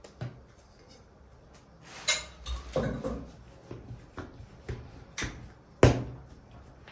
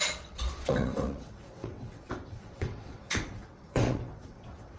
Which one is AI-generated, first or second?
second